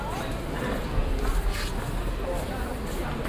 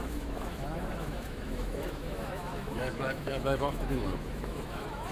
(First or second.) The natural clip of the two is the first